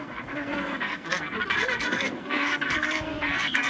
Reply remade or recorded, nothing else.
remade